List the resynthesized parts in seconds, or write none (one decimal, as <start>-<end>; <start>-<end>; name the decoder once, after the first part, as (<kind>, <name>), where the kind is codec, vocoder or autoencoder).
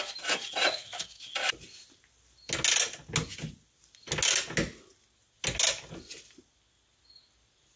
0.7-1.2 (codec, SNAC)